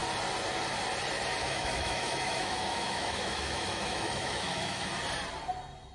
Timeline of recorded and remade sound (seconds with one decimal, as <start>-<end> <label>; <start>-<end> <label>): 0.0-1.4 recorded; 1.4-4.9 remade; 4.9-5.9 recorded